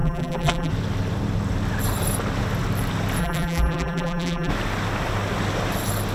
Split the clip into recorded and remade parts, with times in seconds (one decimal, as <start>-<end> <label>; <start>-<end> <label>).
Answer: 0.0-0.7 remade; 0.7-3.2 recorded; 3.2-4.5 remade; 4.5-6.1 recorded